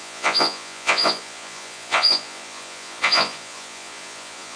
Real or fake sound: fake